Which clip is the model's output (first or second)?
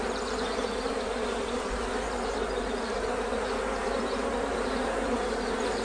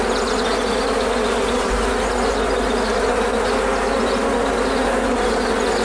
first